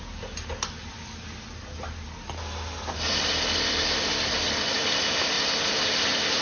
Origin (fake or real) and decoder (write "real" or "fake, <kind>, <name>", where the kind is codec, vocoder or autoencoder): real